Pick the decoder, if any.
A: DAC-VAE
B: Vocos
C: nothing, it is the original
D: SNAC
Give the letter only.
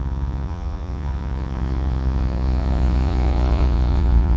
B